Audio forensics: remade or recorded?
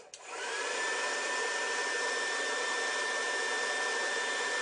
recorded